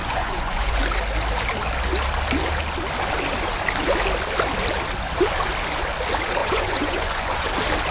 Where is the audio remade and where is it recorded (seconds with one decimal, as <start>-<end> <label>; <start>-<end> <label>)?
0.0-0.8 remade; 0.8-6.4 recorded; 6.4-7.5 remade; 7.5-7.9 recorded